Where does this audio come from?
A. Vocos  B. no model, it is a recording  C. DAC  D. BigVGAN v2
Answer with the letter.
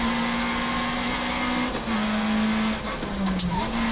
B